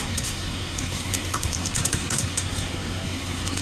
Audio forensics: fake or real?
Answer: fake